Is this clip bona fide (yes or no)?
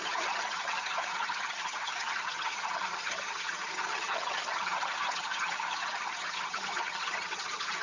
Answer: no